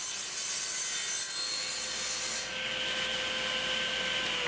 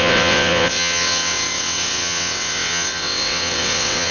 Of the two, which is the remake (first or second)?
second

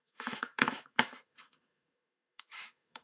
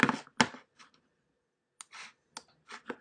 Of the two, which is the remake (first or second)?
first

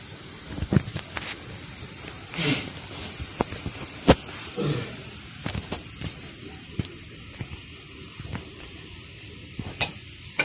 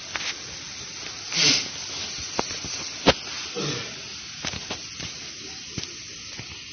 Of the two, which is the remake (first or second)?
first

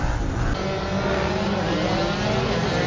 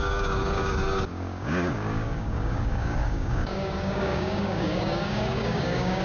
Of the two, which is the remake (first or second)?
second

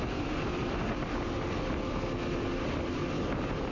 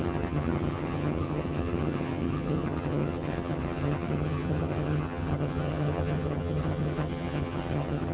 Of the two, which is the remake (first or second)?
second